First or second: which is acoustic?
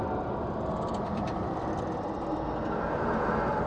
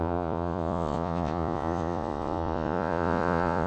first